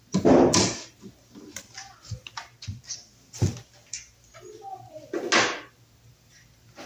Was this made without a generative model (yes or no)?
yes